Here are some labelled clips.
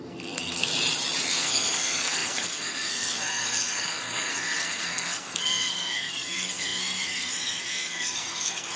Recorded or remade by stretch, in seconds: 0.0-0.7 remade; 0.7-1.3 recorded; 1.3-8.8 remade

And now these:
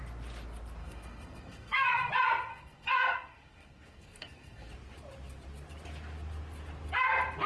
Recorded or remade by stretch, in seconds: 0.0-0.8 recorded; 0.8-2.1 remade; 2.1-2.5 recorded; 2.5-4.7 remade; 4.7-7.5 recorded

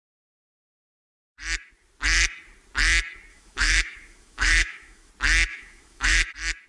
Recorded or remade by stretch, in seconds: 0.0-3.3 recorded; 3.3-5.1 remade; 5.1-5.5 recorded; 5.5-6.2 remade; 6.2-6.7 recorded

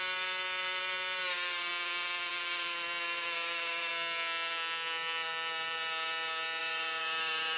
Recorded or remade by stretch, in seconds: 0.0-1.7 remade; 1.7-2.3 recorded; 2.3-3.9 remade; 3.9-6.6 recorded; 6.6-7.6 remade

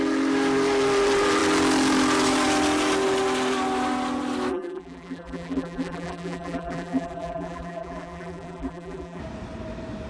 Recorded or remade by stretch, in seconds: 0.0-4.5 recorded; 4.5-9.2 remade; 9.2-10.1 recorded

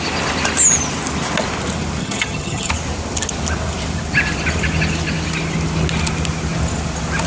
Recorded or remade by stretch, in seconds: 0.0-2.0 recorded; 2.0-2.7 remade; 2.7-7.3 recorded

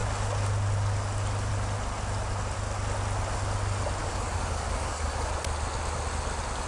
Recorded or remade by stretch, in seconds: 0.0-4.0 recorded; 4.0-5.3 remade; 5.3-6.7 recorded

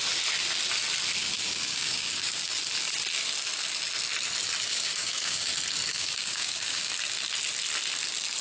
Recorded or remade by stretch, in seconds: 0.0-1.2 recorded; 1.2-2.5 remade; 2.5-4.7 recorded; 4.7-5.5 remade; 5.5-5.9 recorded; 5.9-6.9 remade; 6.9-8.4 recorded